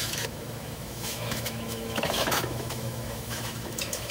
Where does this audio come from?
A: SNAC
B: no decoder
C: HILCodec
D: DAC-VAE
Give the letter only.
D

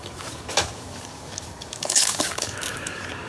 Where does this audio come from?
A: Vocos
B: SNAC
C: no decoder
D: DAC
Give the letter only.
D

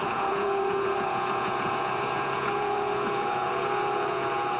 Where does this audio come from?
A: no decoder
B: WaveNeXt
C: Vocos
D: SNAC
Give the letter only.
C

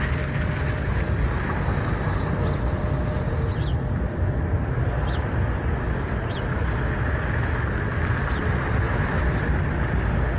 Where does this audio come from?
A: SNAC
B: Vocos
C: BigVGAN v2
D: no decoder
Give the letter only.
D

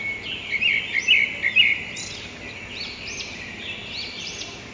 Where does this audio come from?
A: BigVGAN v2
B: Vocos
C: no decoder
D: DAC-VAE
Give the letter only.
C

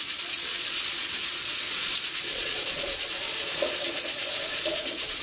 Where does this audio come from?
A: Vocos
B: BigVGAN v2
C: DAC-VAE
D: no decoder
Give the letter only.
A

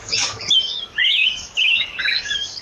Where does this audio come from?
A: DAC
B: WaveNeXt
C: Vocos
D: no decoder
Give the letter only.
A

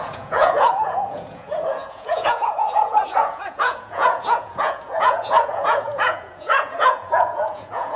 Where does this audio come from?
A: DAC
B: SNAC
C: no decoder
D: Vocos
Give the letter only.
D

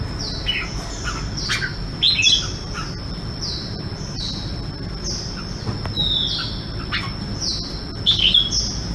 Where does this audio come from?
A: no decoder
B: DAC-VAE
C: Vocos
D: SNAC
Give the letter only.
A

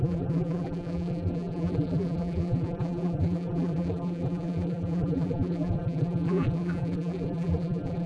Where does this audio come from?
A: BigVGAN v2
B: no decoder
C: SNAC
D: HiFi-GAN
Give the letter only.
A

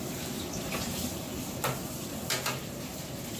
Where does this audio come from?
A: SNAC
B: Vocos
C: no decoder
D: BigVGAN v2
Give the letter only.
D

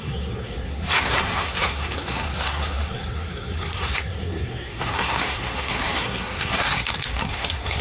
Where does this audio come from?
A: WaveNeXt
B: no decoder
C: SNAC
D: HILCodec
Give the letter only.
C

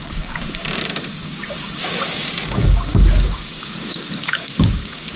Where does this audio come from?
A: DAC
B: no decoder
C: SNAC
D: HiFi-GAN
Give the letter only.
A